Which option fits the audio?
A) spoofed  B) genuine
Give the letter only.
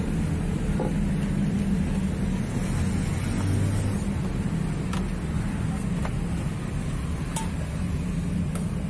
B